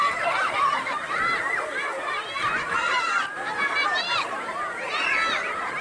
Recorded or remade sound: remade